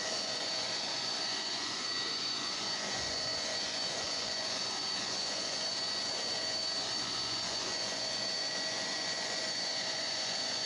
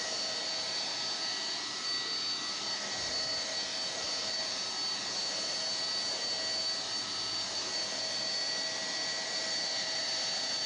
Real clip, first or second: second